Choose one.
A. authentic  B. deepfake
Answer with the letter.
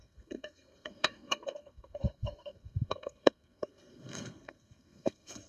B